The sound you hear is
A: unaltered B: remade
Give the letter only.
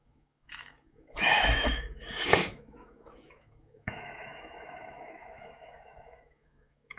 B